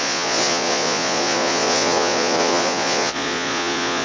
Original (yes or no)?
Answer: no